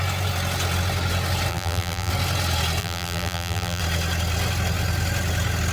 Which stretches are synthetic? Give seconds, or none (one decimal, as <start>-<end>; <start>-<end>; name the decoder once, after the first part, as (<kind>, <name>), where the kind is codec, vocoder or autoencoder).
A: 1.5-2.1 (vocoder, BigVGAN v2); 2.8-3.8